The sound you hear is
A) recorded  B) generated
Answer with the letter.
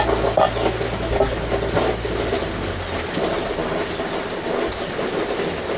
A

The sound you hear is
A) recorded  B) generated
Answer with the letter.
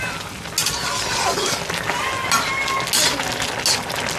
A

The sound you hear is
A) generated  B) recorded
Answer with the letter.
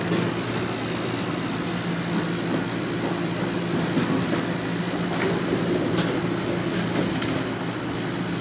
B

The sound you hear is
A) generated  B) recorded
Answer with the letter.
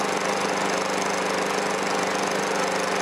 B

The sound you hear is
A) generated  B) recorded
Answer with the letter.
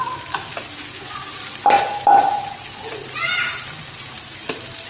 B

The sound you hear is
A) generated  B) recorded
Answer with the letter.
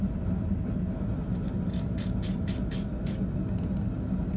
B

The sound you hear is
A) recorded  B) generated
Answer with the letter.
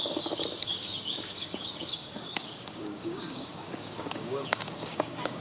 B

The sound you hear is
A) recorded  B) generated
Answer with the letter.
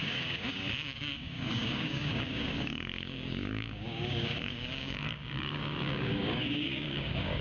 B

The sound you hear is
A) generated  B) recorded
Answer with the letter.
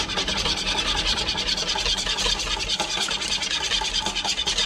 B